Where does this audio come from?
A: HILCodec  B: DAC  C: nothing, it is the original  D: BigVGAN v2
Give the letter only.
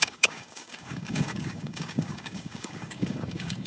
B